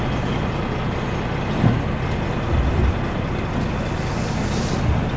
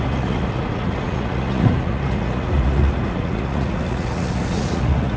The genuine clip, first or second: first